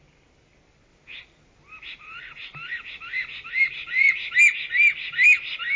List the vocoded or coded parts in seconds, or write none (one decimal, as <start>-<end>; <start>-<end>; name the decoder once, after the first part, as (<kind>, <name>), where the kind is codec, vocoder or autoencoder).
none